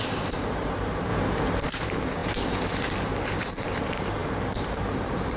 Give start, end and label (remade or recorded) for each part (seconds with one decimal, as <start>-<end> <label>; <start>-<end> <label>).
0.0-1.1 remade; 1.1-1.7 recorded; 1.7-2.2 remade; 2.2-3.2 recorded; 3.2-5.4 remade